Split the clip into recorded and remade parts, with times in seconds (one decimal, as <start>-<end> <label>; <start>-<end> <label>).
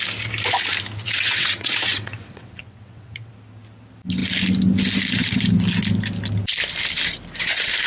0.0-1.0 recorded; 1.0-3.3 remade; 3.3-7.9 recorded